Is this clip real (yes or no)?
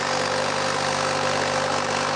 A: yes